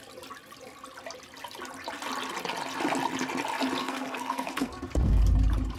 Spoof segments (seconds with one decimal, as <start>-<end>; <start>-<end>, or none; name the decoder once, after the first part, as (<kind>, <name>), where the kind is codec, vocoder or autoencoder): 3.8-5.2 (codec, SNAC)

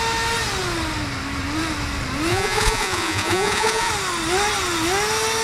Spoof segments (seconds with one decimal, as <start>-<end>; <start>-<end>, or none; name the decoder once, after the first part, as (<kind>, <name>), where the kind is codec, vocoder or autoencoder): 2.3-3.9 (vocoder, Vocos)

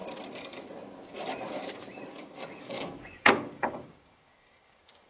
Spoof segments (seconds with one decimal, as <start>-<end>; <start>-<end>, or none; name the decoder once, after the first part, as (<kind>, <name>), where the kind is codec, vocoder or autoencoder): 2.1-5.1 (codec, DAC)

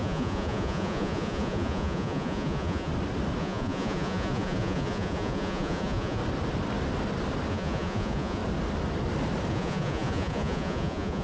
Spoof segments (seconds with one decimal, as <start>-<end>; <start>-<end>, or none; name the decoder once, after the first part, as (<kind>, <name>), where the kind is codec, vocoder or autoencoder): 0.0-2.9 (vocoder, Vocos); 3.4-6.2; 7.5-8.4; 9.5-11.2

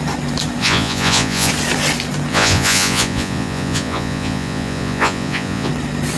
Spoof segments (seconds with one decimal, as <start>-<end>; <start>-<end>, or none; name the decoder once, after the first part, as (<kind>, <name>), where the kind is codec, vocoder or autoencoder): 0.6-1.5 (vocoder, Vocos); 2.3-5.7

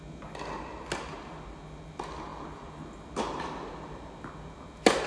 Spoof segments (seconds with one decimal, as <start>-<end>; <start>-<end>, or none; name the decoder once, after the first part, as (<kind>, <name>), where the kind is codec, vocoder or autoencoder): none

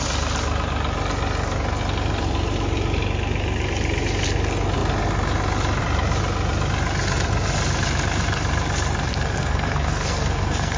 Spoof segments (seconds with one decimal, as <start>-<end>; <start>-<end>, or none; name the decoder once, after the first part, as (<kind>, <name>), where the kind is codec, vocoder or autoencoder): 9.1-10.8 (codec, SNAC)

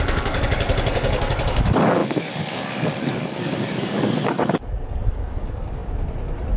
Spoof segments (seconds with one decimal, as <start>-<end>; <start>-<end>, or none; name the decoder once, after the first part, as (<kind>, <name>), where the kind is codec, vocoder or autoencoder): 0.0-5.8 (codec, DAC)